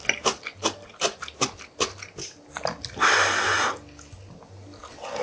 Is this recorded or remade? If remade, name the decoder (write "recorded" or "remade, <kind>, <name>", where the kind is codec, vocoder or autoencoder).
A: recorded